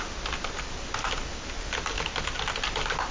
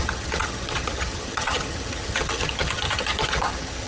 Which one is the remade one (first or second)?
second